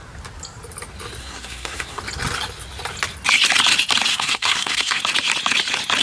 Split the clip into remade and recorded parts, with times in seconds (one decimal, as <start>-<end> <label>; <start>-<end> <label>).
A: 0.0-1.2 recorded; 1.2-2.0 remade; 2.0-4.1 recorded; 4.1-5.0 remade; 5.0-6.0 recorded